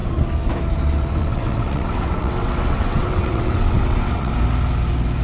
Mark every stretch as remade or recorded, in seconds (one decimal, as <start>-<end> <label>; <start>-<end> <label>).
0.0-1.2 recorded; 1.2-4.3 remade; 4.3-5.2 recorded